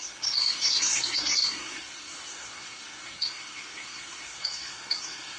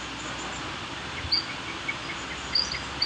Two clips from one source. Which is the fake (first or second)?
first